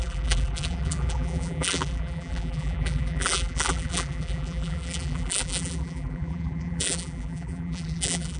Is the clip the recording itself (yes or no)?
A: no